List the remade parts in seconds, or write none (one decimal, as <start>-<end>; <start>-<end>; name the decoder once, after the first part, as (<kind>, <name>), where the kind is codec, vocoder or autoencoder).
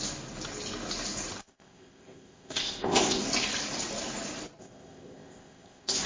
1.4-3.2 (codec, ZipCodec); 4.6-6.1